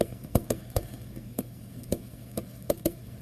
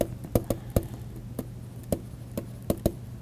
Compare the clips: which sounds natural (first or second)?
second